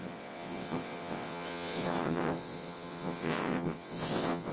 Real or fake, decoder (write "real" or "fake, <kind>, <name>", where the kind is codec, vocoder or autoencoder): fake, vocoder, WaveNeXt